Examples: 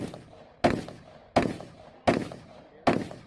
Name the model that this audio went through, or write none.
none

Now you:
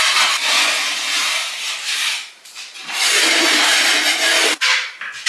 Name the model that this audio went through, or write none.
none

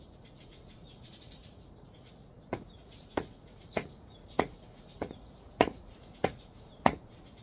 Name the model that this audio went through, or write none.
vocoder, Vocos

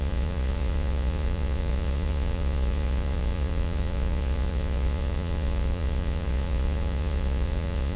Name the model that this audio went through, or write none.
vocoder, Vocos